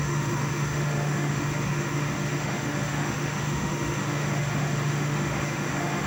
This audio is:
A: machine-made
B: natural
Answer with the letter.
A